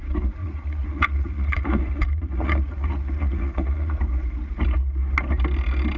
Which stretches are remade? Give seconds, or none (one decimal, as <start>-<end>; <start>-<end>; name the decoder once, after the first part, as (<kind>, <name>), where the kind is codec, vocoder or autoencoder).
0.4-4.0 (vocoder, Vocos)